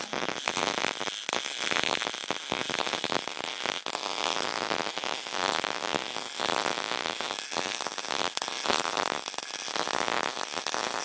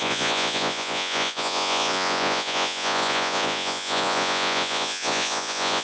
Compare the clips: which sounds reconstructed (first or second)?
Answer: second